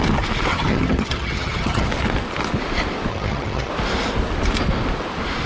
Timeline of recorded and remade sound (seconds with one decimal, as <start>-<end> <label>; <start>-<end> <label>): 0.0-0.5 recorded; 0.5-1.9 remade; 1.9-3.1 recorded; 3.1-3.7 remade; 3.7-5.5 recorded